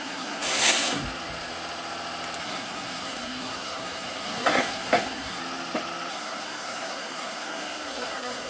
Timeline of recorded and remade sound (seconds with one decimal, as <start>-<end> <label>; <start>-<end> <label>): 0.0-1.0 remade; 1.0-2.4 recorded; 2.4-5.4 remade; 5.4-6.1 recorded; 6.1-8.5 remade